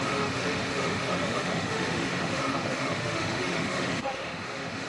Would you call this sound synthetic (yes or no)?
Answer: yes